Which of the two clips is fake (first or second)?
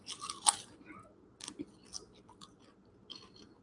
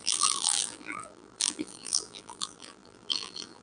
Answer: second